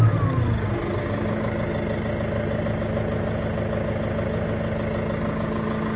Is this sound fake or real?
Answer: real